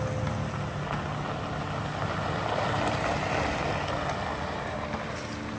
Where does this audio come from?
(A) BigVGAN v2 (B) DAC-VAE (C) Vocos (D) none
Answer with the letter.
D